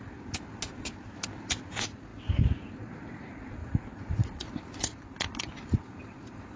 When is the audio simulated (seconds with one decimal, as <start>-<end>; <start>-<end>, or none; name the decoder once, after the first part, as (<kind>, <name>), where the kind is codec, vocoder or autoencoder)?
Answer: 3.6-4.5 (vocoder, Vocos)